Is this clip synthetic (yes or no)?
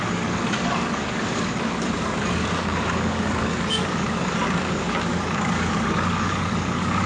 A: yes